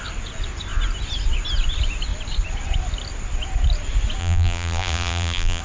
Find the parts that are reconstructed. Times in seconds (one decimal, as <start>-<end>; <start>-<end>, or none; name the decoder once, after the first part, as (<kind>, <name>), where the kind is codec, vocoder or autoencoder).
4.2-5.6 (vocoder, BigVGAN v2)

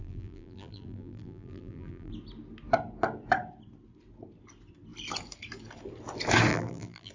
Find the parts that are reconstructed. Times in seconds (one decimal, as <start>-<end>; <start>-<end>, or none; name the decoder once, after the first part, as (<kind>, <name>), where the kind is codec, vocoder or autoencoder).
0.0-2.1 (vocoder, BigVGAN v2); 6.5-7.1

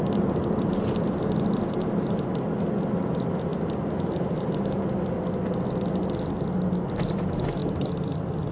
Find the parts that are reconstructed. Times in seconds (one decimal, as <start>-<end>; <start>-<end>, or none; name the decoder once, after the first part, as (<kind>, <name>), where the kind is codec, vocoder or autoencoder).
none

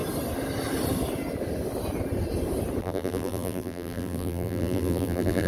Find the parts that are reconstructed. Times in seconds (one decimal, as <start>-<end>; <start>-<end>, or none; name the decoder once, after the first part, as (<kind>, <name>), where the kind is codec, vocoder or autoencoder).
2.8-5.5 (vocoder, BigVGAN v2)

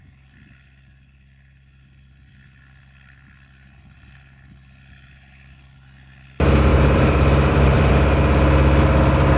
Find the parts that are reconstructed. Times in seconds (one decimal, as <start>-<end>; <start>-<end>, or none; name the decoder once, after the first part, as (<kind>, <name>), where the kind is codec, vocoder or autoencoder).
6.7-7.9 (vocoder, BigVGAN v2)